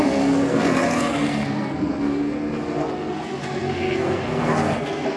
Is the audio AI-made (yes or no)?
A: yes